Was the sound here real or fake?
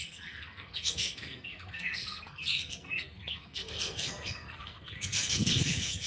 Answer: fake